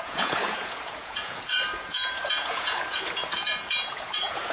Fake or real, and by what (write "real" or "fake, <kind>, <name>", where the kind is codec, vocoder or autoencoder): fake, vocoder, Vocos